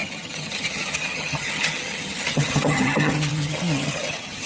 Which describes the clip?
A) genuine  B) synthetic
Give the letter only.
B